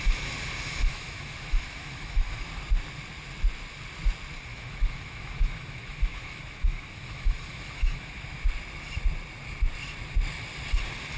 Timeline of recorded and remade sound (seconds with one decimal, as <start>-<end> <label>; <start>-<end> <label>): 0.0-0.8 recorded; 0.8-2.5 remade; 2.5-4.5 recorded; 4.5-8.4 remade; 8.4-11.2 recorded